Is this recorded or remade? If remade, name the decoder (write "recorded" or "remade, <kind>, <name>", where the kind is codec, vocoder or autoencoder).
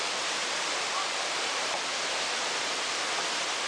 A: remade, vocoder, BigVGAN v2